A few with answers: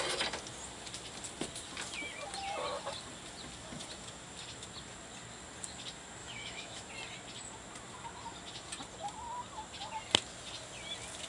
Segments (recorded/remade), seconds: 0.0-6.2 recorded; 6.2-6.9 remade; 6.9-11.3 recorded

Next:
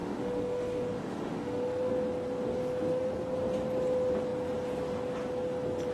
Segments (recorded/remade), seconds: 0.0-1.9 remade; 1.9-2.6 recorded; 2.6-3.1 remade; 3.1-5.9 recorded